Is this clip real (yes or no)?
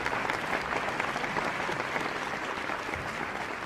yes